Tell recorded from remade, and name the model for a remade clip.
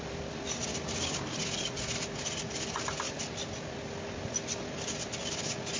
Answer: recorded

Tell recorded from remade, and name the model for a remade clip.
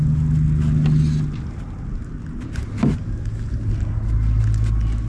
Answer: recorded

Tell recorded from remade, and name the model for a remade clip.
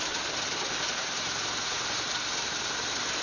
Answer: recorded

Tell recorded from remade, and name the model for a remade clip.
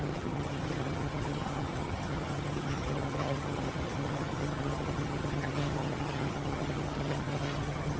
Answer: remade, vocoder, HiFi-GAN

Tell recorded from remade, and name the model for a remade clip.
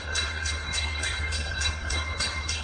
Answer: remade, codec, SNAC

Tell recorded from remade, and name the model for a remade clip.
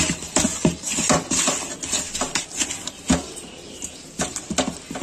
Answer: recorded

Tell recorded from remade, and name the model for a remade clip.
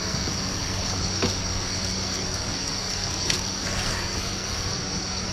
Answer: remade, codec, SNAC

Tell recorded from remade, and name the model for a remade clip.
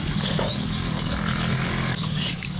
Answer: remade, codec, DAC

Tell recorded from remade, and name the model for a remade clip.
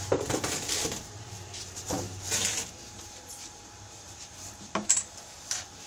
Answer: remade, vocoder, BigVGAN v2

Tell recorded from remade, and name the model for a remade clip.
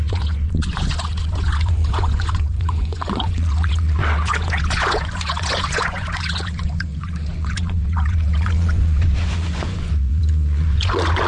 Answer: remade, vocoder, Vocos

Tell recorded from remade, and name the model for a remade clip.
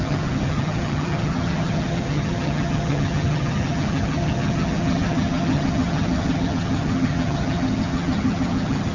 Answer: remade, vocoder, HiFi-GAN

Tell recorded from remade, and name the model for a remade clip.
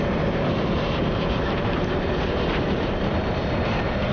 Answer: remade, vocoder, BigVGAN v2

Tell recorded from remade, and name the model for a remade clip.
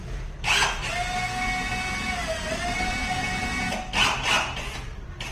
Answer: recorded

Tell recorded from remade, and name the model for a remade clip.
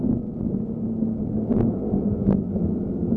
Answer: recorded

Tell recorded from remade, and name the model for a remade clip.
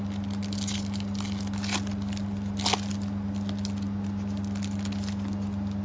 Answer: recorded